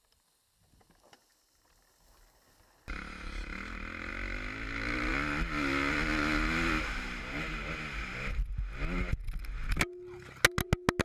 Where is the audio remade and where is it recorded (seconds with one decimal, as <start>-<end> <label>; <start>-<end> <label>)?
0.0-11.0 recorded